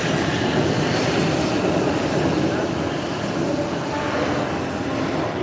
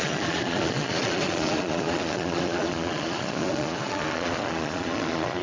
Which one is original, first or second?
first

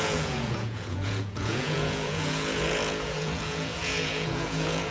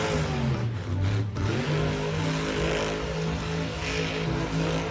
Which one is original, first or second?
second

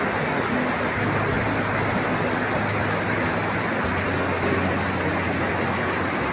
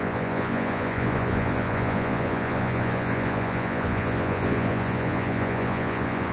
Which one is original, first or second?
first